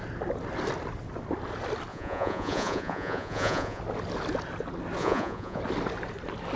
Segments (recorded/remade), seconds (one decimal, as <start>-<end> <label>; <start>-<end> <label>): 0.0-1.9 recorded; 1.9-3.8 remade; 3.8-5.0 recorded; 5.0-5.6 remade; 5.6-6.6 recorded